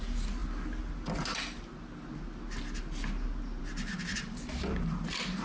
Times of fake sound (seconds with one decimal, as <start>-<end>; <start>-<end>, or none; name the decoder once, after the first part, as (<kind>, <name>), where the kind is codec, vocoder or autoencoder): none